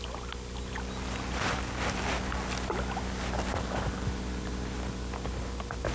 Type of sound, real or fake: real